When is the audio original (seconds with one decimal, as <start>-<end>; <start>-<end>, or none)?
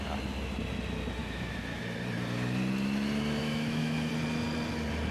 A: 0.0-1.2; 1.8-3.4; 4.1-5.1